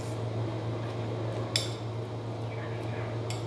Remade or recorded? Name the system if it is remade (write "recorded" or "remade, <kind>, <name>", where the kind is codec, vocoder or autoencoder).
recorded